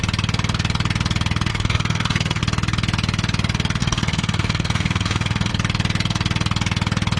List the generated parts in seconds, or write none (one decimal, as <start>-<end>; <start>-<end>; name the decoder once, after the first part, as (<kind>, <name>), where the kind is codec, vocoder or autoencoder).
1.5-2.4 (codec, SNAC); 3.8-5.5